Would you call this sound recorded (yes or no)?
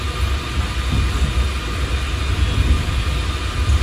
yes